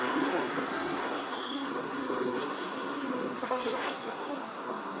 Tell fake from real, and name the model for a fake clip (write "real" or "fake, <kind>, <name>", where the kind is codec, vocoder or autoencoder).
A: fake, codec, SNAC